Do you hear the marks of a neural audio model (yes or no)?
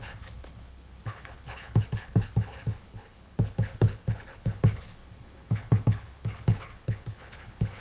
yes